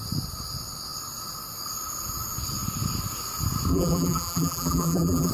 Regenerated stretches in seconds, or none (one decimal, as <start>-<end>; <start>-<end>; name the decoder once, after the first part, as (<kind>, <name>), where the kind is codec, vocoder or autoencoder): 3.7-5.3 (vocoder, BigVGAN v2)